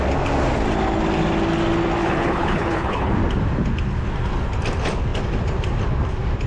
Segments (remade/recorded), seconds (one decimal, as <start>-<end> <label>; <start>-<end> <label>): 0.0-2.0 recorded; 2.0-3.1 remade; 3.1-6.5 recorded